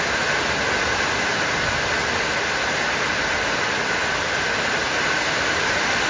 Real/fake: real